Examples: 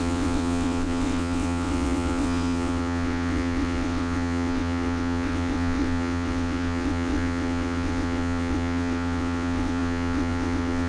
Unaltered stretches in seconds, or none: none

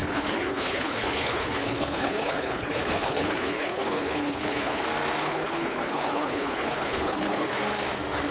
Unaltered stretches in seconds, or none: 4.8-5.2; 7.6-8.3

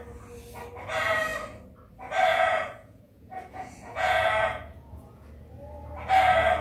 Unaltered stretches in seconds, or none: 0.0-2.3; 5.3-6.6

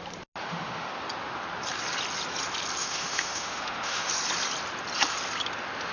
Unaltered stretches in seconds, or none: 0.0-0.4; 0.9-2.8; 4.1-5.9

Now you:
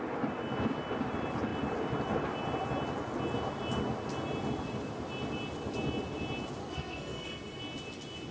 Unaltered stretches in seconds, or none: 0.0-6.6; 7.6-8.3